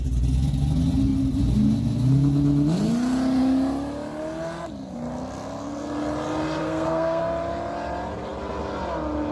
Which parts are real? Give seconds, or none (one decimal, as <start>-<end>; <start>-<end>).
0.0-6.6; 7.2-9.3